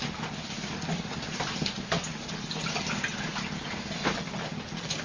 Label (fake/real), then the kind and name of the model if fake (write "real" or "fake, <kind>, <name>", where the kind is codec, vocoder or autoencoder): real